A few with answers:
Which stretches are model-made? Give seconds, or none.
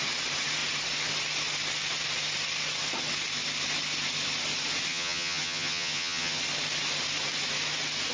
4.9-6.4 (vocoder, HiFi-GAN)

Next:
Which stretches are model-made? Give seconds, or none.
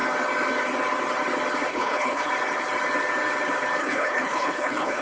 1.7-2.3 (codec, HILCodec); 3.8-5.0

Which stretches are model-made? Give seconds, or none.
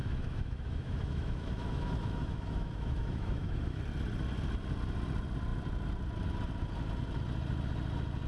0.0-3.8 (autoencoder, DAC-VAE)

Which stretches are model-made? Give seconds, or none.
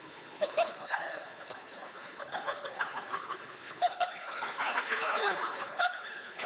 0.0-6.5 (codec, HILCodec)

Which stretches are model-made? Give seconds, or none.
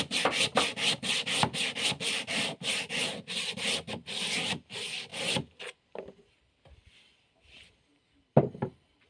none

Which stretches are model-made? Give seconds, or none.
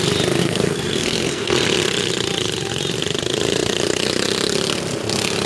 0.4-1.5 (codec, SNAC)